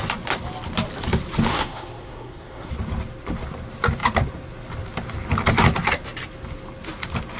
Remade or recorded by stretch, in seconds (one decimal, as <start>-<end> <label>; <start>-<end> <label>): 0.0-1.5 recorded; 1.5-2.7 remade; 2.7-7.4 recorded